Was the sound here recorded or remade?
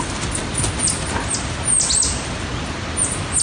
recorded